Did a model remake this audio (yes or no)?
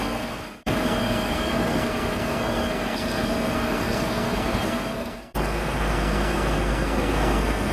yes